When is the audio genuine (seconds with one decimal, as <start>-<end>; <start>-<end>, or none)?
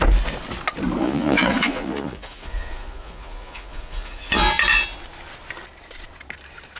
0.0-1.0; 4.4-6.8